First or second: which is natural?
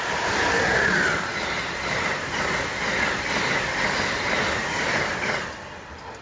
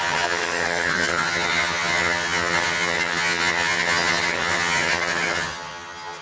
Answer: first